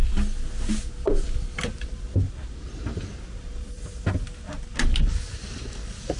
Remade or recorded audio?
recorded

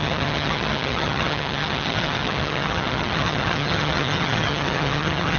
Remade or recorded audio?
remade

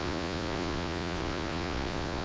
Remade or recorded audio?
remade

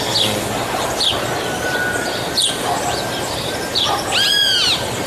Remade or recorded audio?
remade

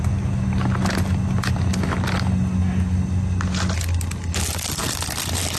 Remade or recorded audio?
recorded